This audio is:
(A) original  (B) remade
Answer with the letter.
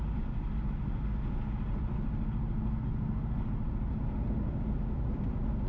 A